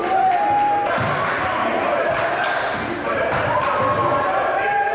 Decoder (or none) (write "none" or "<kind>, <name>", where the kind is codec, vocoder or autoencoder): none